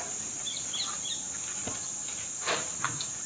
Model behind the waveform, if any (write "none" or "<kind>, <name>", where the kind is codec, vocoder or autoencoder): none